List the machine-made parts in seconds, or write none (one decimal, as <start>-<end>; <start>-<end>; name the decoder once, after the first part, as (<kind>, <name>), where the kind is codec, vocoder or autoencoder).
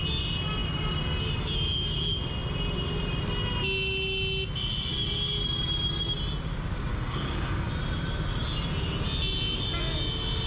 6.9-7.7 (codec, DAC)